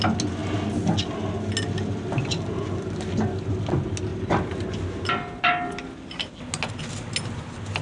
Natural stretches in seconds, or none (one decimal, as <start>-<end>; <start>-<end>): 0.0-7.8